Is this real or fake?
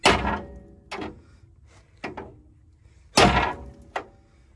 real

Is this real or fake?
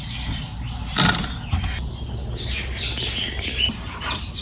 real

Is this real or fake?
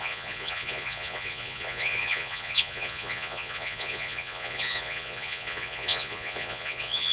fake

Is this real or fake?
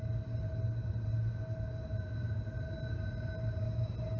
real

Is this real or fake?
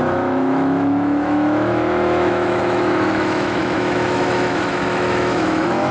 fake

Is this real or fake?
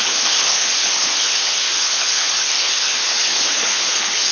fake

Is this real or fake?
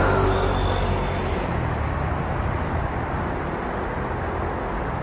real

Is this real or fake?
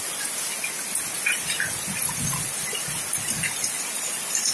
real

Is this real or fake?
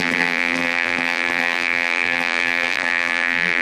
fake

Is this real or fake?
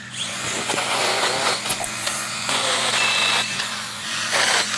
fake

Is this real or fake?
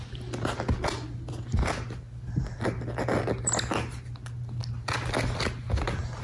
real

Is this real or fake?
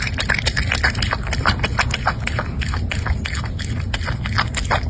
real